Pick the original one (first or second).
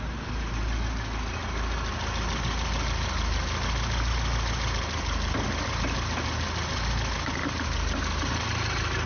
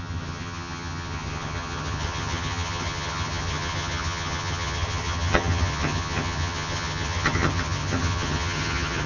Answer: first